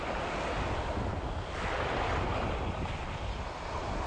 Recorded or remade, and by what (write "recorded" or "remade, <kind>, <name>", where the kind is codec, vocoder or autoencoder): recorded